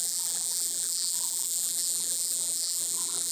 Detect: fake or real fake